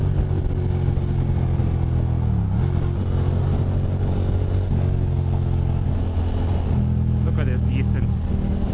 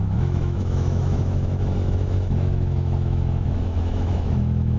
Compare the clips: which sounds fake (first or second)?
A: second